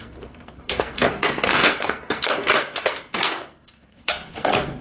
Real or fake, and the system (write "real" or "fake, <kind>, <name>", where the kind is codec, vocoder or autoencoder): fake, codec, SNAC